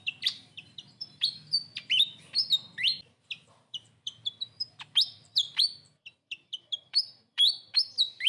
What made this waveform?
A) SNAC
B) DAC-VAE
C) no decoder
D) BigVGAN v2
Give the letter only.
D